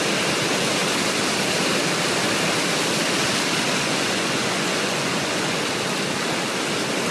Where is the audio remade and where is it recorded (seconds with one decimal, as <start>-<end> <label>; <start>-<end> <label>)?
0.0-3.7 recorded; 3.7-5.6 remade; 5.6-7.1 recorded